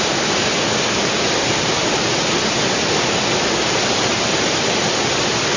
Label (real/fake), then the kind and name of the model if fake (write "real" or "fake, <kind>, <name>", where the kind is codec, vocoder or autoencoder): real